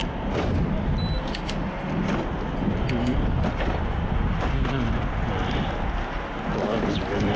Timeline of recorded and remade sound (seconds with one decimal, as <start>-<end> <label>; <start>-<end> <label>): 0.0-7.4 recorded